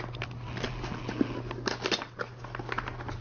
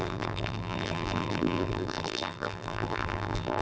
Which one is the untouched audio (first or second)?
first